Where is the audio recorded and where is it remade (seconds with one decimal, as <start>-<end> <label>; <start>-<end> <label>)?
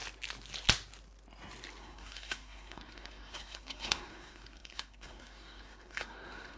0.0-1.8 recorded; 1.8-6.6 remade